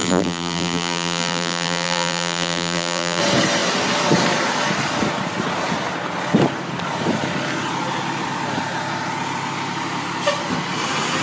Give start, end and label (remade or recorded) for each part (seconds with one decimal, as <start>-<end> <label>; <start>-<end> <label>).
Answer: 0.0-3.2 remade; 3.2-11.2 recorded